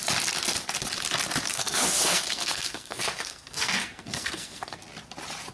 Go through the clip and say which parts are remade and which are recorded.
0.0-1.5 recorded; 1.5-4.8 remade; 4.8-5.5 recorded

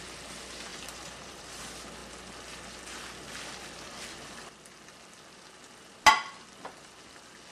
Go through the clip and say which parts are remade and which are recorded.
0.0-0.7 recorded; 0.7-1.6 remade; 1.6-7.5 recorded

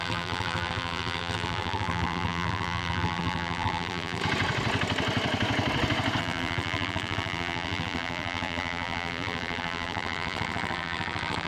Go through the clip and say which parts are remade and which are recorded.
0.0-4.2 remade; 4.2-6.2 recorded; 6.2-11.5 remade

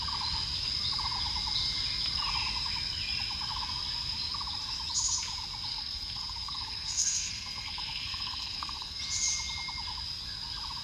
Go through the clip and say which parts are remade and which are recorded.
0.0-5.7 recorded; 5.7-9.0 remade; 9.0-10.8 recorded

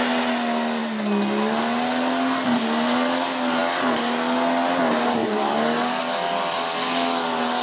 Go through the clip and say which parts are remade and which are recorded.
0.0-7.6 recorded

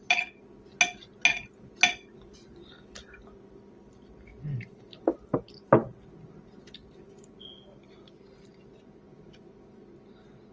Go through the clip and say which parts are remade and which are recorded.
0.0-10.5 recorded

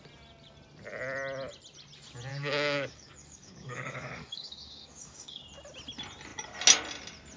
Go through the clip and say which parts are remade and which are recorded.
0.0-2.3 recorded; 2.3-5.4 remade; 5.4-7.4 recorded

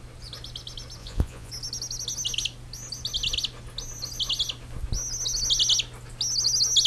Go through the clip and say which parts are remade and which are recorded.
0.0-1.0 recorded; 1.0-1.5 remade; 1.5-6.9 recorded